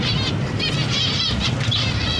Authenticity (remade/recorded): recorded